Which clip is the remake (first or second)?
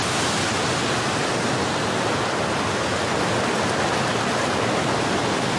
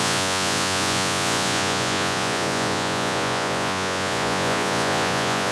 second